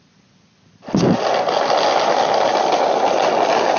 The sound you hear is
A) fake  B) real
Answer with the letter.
B